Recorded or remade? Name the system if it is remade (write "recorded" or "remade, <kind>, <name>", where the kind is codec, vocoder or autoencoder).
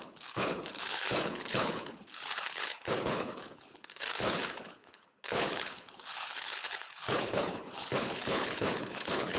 remade, codec, HILCodec